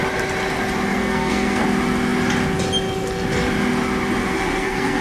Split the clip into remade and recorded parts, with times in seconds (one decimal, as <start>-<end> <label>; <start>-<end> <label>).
0.0-0.9 recorded; 0.9-1.6 remade; 1.6-4.2 recorded; 4.2-5.0 remade